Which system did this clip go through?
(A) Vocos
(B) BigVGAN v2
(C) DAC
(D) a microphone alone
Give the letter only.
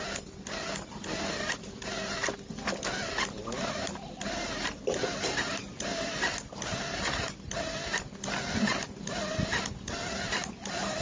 D